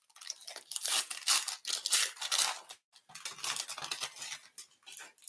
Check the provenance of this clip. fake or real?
real